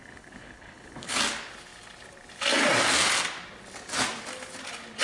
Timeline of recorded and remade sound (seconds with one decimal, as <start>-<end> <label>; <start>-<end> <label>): 0.0-1.2 remade; 1.2-5.0 recorded